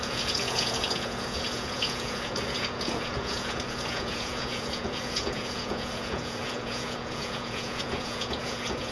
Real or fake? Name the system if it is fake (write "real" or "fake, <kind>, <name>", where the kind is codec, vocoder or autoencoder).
fake, vocoder, Vocos